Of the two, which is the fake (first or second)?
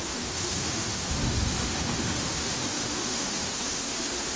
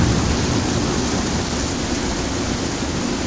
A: first